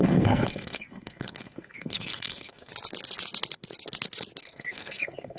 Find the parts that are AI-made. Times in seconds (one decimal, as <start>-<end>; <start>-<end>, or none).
0.0-2.7; 4.4-5.4